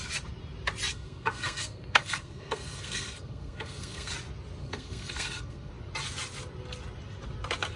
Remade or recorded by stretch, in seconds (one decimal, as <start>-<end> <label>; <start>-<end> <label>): 0.0-0.9 recorded; 0.9-4.1 remade; 4.1-4.6 recorded; 4.6-5.7 remade; 5.7-7.8 recorded